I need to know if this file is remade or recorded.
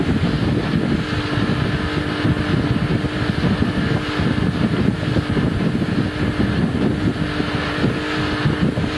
recorded